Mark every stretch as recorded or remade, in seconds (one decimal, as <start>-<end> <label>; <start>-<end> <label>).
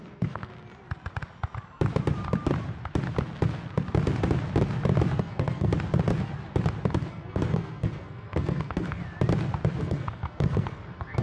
0.0-0.5 remade; 0.5-5.2 recorded; 5.2-5.7 remade; 5.7-7.1 recorded; 7.1-9.0 remade; 9.0-9.8 recorded; 9.8-11.2 remade